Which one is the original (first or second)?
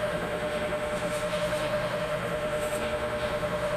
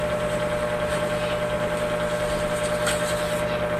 second